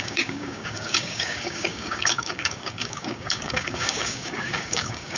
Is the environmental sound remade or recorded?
remade